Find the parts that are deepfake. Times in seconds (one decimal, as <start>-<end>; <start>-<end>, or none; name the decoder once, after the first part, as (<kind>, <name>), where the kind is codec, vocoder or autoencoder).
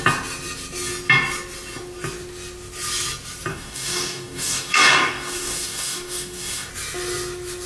3.5-6.7 (codec, DAC)